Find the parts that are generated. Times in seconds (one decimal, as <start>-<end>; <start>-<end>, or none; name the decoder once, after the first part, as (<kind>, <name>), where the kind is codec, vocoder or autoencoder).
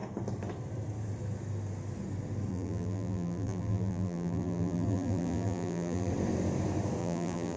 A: 2.5-6.1 (vocoder, BigVGAN v2); 7.0-7.6